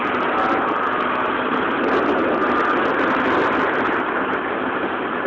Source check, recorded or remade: recorded